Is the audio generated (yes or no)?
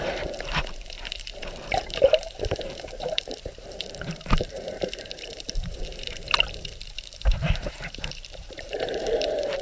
yes